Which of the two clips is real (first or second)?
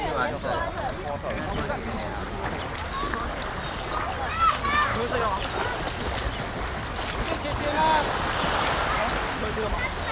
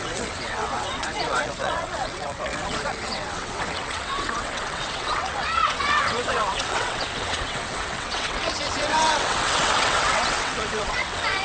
first